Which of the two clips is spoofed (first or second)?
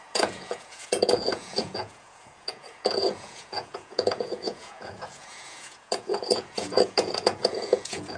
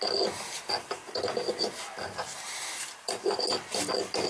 first